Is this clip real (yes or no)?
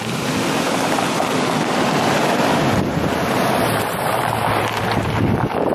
yes